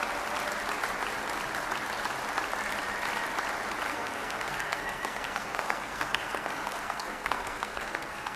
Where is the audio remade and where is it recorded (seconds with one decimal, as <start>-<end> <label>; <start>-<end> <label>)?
0.0-3.9 recorded; 3.9-8.4 remade